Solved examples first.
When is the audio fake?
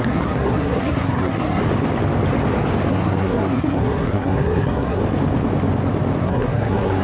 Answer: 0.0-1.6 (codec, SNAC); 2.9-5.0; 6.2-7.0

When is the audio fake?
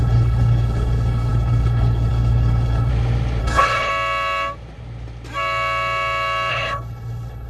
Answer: 0.0-2.9 (codec, HILCodec); 3.4-3.9; 6.5-7.5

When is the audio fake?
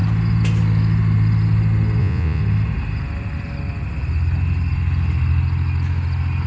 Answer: 2.0-2.4 (vocoder, Vocos)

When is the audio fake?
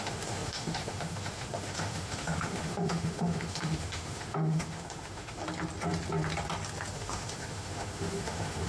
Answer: 0.0-5.4 (autoencoder, DAC-VAE); 6.9-8.7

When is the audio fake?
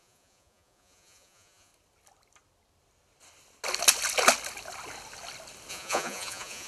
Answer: 0.0-1.7 (vocoder, Vocos); 5.7-6.7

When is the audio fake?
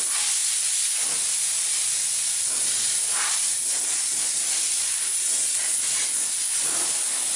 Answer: none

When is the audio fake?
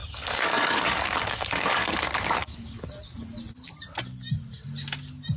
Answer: 0.0-2.0 (codec, DAC); 2.4-2.9